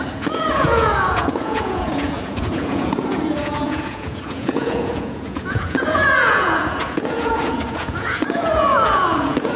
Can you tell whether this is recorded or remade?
remade